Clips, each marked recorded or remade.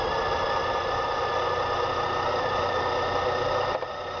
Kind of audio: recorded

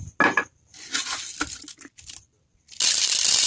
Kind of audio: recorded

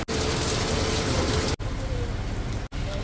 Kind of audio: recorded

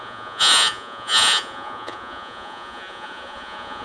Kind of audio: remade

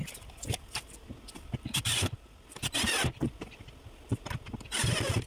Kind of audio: recorded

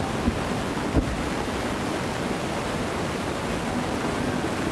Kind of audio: recorded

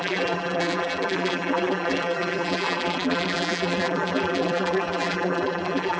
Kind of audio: remade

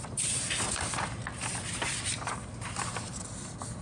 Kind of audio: recorded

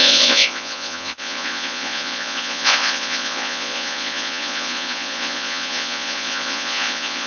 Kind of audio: remade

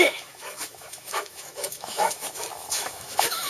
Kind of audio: remade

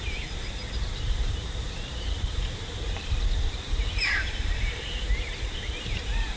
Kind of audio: remade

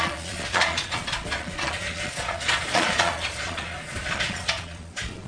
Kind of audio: remade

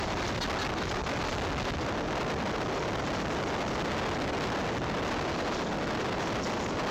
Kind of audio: recorded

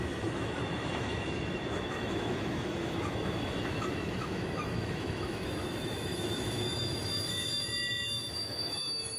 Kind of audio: remade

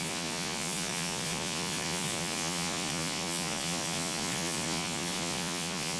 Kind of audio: remade